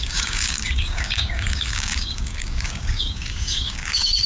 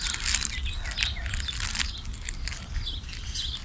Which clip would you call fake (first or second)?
first